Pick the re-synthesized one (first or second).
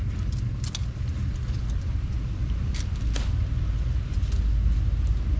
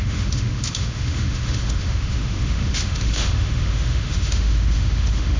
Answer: second